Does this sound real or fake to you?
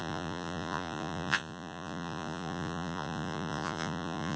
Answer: fake